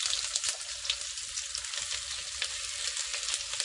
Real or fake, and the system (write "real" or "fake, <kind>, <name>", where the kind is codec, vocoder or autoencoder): real